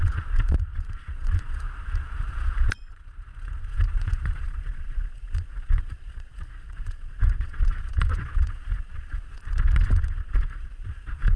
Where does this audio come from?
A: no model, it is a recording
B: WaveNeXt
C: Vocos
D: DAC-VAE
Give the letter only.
C